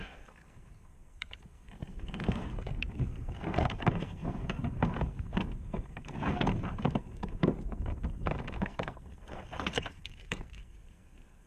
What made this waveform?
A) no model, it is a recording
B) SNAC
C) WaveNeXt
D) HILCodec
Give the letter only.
B